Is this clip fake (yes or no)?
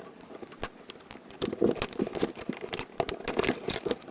no